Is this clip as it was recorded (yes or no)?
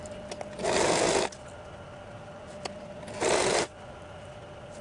yes